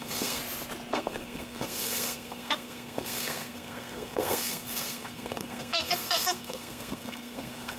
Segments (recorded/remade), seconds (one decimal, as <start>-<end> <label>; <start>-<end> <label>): 0.0-0.4 remade; 0.4-0.9 recorded; 0.9-7.8 remade